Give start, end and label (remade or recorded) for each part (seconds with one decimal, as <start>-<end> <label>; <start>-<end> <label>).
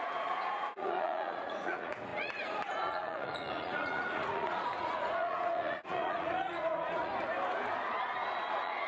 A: 0.0-7.1 remade; 7.1-8.0 recorded; 8.0-8.9 remade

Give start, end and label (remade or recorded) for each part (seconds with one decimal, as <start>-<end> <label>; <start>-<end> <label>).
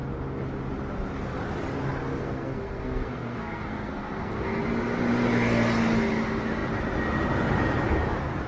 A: 0.0-2.2 recorded; 2.2-4.6 remade; 4.6-8.5 recorded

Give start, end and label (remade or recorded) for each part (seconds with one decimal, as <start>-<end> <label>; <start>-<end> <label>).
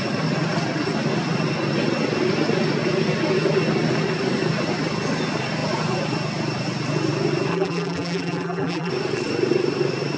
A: 0.0-7.5 recorded; 7.5-8.9 remade; 8.9-10.2 recorded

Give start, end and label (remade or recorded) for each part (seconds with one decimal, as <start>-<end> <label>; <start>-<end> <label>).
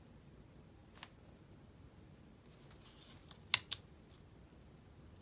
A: 0.0-5.2 recorded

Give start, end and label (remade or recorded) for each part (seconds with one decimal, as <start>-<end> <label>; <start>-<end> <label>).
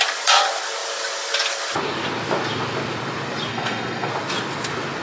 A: 0.0-3.5 recorded; 3.5-4.1 remade; 4.1-5.0 recorded